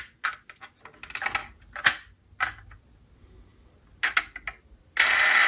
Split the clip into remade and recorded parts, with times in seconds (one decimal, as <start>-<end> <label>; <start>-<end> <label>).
0.0-5.5 recorded